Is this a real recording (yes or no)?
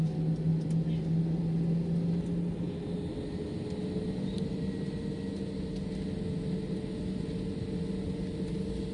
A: yes